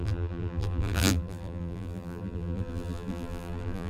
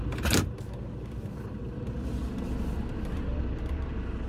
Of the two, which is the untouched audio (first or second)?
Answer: second